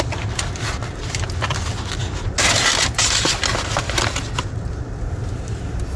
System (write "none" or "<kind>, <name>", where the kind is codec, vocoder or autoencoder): none